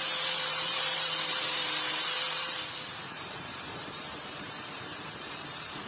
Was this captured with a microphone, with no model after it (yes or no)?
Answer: no